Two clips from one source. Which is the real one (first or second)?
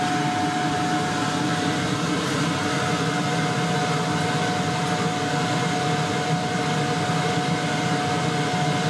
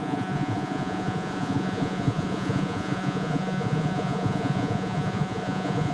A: first